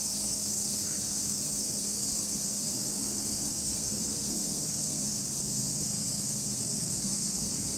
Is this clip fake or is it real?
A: fake